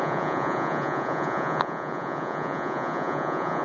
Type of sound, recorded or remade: remade